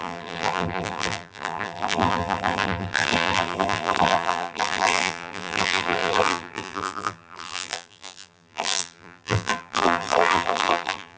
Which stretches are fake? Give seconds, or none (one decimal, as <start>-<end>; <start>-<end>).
0.0-11.2